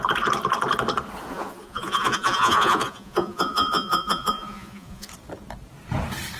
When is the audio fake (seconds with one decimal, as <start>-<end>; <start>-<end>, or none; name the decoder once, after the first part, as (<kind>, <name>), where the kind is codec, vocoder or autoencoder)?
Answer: 1.3-5.1 (vocoder, Vocos)